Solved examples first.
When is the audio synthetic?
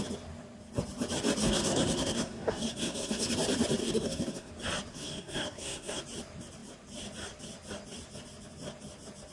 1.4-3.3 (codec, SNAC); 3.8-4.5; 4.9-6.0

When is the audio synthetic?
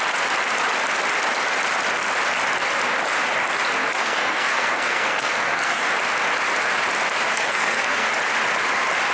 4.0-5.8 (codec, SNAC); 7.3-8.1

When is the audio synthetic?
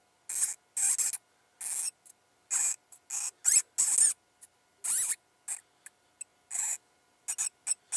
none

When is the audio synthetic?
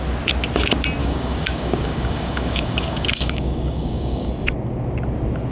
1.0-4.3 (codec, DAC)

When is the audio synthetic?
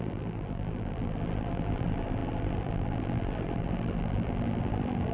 0.0-5.1 (vocoder, BigVGAN v2)